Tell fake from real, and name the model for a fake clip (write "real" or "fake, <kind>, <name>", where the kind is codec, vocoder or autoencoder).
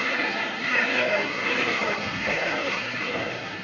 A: fake, codec, SNAC